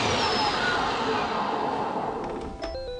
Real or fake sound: real